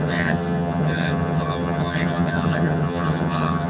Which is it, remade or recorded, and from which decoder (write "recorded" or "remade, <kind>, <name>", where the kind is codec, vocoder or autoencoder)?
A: remade, vocoder, HiFi-GAN